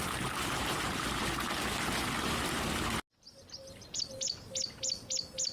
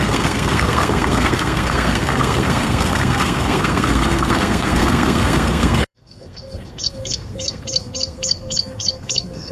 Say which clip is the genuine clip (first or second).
first